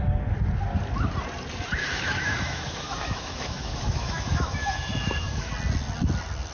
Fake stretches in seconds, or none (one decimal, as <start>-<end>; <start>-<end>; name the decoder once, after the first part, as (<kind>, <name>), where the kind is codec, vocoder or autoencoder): 1.8-5.5 (autoencoder, DAC-VAE)